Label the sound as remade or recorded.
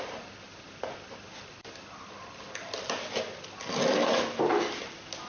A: recorded